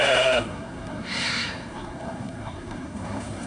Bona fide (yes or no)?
no